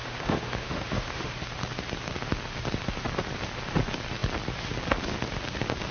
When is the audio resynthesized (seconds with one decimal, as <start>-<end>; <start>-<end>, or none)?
0.0-1.3